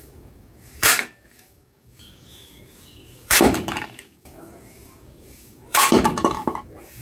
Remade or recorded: remade